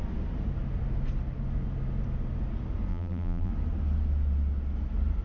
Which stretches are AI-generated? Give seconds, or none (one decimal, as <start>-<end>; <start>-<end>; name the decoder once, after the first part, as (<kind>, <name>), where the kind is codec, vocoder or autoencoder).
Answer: 2.9-3.5 (vocoder, BigVGAN v2)